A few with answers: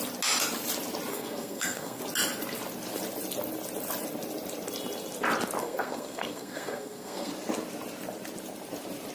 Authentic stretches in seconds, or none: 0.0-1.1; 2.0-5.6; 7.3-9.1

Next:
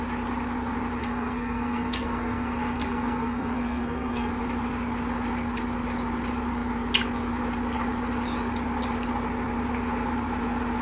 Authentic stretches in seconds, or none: 0.0-1.0; 4.3-10.8

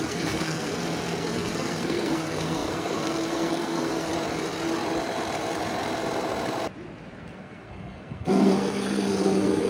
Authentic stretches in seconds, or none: 4.1-7.2

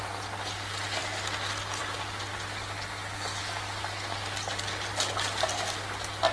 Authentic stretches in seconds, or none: 0.0-6.3

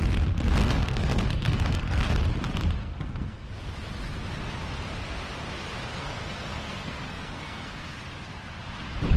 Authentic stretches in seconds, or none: 0.0-0.6; 2.1-2.8; 3.5-5.9; 8.0-9.2